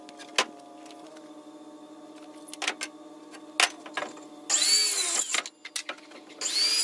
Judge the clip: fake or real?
real